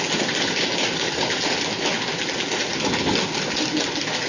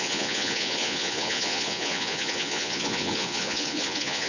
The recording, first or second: first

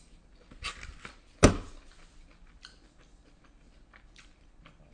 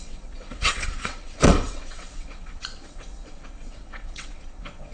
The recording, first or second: first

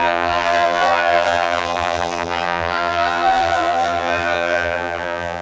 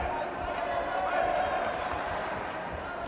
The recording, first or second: second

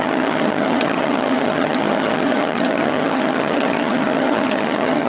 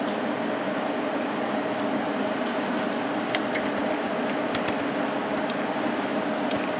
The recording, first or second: second